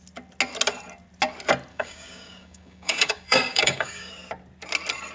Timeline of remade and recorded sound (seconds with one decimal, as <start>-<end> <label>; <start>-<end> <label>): 0.0-1.7 recorded; 1.7-4.1 remade; 4.1-5.1 recorded